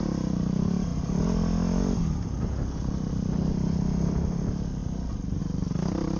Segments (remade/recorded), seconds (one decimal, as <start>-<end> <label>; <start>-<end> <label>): 0.0-6.2 recorded